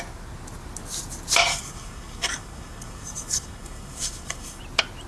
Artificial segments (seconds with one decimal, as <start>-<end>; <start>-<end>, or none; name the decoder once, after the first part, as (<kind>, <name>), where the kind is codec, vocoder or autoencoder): 1.5-4.6 (codec, DAC)